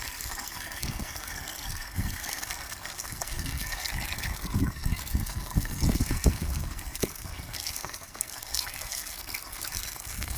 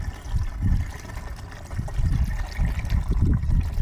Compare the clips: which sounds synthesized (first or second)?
first